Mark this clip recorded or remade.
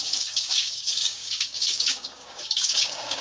remade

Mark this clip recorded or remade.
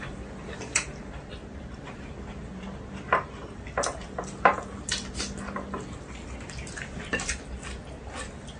recorded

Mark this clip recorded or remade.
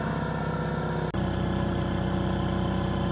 recorded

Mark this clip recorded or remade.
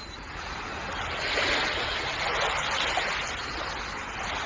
recorded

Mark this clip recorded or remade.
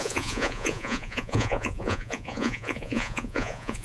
remade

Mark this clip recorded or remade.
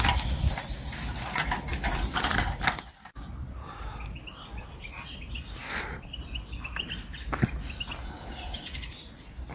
recorded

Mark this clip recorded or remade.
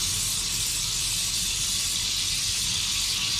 recorded